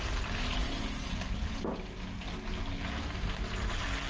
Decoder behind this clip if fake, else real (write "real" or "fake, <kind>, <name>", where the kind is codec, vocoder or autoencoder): real